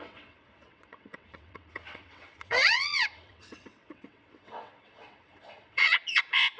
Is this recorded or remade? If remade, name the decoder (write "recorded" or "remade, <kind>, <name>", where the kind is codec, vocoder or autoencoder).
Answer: remade, vocoder, WaveNeXt